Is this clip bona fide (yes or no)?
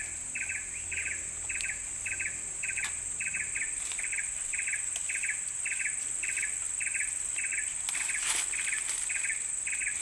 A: yes